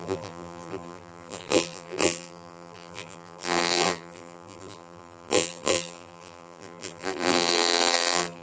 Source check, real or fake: fake